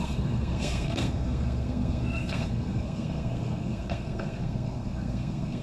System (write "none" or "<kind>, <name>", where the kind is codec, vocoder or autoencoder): codec, SNAC